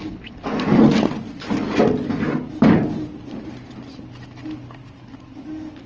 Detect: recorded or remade recorded